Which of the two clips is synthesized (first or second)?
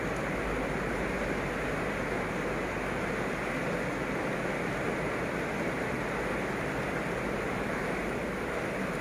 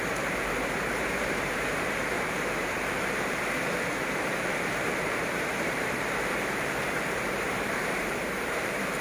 second